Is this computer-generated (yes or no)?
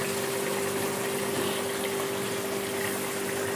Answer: no